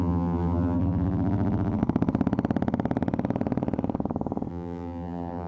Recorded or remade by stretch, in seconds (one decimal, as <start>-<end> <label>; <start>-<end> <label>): 0.0-1.8 remade; 1.8-4.5 recorded; 4.5-5.5 remade